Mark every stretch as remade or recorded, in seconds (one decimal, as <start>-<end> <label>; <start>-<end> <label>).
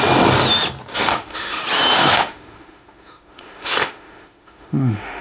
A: 0.0-0.9 recorded; 0.9-1.6 remade; 1.6-2.0 recorded; 2.0-5.2 remade